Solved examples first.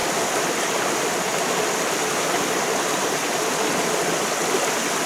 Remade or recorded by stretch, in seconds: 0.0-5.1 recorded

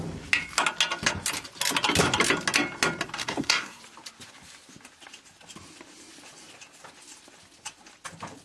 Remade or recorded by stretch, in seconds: 0.0-3.2 recorded; 3.2-3.8 remade; 3.8-8.4 recorded

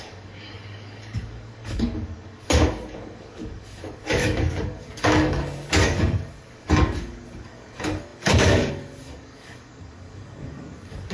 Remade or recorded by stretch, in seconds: 0.0-11.1 remade

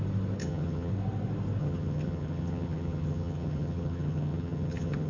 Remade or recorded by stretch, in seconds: 0.0-0.4 recorded; 0.4-0.9 remade; 0.9-1.6 recorded; 1.6-5.1 remade

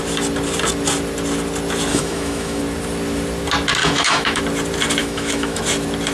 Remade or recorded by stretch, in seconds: 0.0-1.9 recorded; 1.9-2.6 remade; 2.6-3.8 recorded; 3.8-4.4 remade; 4.4-5.0 recorded; 5.0-5.6 remade; 5.6-6.1 recorded

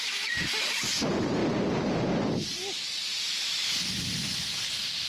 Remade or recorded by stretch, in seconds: 0.0-5.1 remade